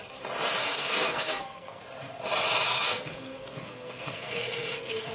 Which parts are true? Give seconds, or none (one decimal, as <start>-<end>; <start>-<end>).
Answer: 0.0-0.6; 1.8-2.7